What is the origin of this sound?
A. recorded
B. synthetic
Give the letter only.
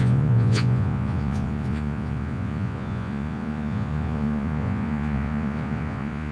B